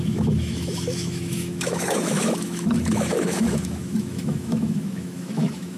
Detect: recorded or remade remade